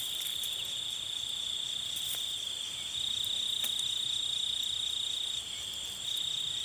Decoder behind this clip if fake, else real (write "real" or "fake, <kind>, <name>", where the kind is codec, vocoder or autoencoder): real